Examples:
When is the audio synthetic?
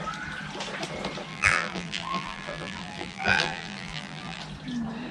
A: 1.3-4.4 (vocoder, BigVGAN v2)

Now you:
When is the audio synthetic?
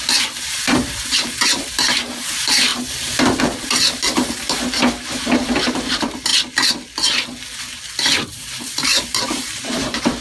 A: 0.0-6.3 (vocoder, BigVGAN v2); 8.3-10.2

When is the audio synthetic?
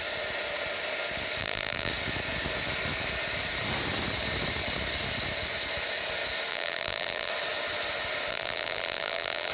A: 1.4-1.9 (vocoder, BigVGAN v2); 6.5-7.3; 8.3-9.5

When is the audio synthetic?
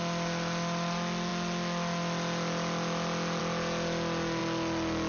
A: none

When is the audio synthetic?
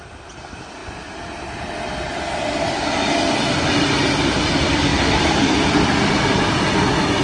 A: 4.9-6.1 (vocoder, BigVGAN v2)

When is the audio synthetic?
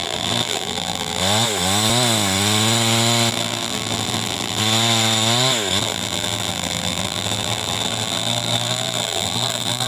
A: 0.0-1.2 (vocoder, BigVGAN v2); 3.3-4.6; 5.8-9.9